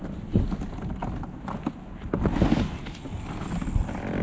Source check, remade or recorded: recorded